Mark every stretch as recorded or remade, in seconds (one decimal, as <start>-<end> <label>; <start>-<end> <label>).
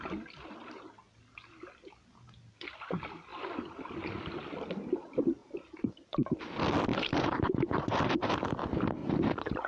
0.0-3.3 recorded; 3.3-3.8 remade; 3.8-5.4 recorded; 5.4-6.4 remade; 6.4-6.9 recorded; 6.9-8.3 remade; 8.3-9.0 recorded; 9.0-9.7 remade